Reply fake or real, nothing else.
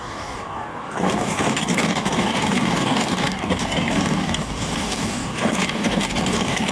fake